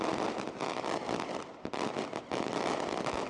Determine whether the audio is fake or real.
real